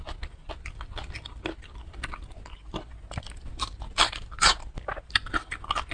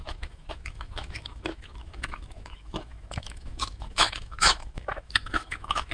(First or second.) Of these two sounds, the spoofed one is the second